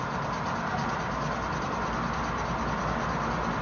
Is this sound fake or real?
real